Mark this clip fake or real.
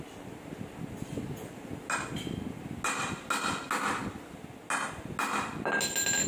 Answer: real